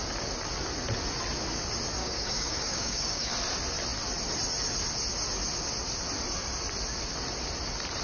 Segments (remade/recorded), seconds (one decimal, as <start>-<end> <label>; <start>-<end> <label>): 0.0-2.0 recorded; 2.0-3.3 remade; 3.3-8.0 recorded